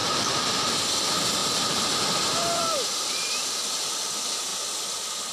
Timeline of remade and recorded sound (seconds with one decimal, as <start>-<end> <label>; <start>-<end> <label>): 0.0-0.7 remade; 0.7-1.4 recorded; 1.4-3.8 remade; 3.8-5.3 recorded